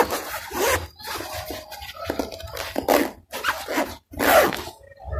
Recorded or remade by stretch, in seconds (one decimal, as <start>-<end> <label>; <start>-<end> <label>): 0.0-2.2 recorded; 2.2-3.0 remade; 3.0-5.2 recorded